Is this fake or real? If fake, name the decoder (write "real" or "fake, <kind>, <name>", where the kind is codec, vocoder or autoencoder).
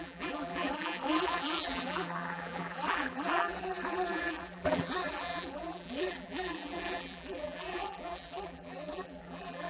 fake, vocoder, BigVGAN v2